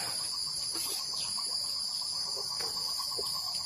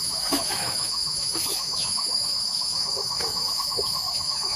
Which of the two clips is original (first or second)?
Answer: first